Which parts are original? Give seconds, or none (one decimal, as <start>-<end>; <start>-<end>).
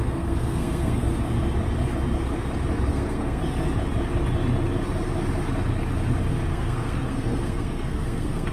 1.1-2.9; 3.4-6.5